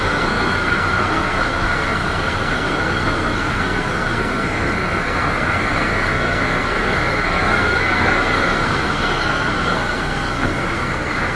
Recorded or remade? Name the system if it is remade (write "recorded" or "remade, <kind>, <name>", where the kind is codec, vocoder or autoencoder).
remade, codec, SNAC